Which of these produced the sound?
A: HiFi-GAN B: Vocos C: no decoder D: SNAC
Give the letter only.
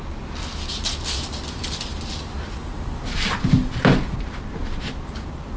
C